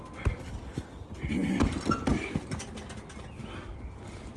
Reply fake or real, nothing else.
real